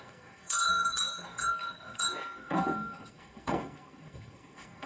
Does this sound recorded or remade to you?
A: remade